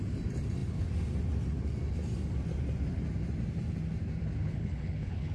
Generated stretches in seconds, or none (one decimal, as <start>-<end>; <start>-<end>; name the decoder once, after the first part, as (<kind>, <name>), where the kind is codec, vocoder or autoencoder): 4.4-5.3 (codec, HILCodec)